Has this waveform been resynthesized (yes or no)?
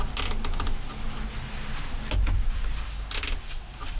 no